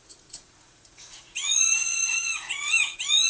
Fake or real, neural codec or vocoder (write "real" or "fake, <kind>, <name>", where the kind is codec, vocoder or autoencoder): fake, vocoder, Vocos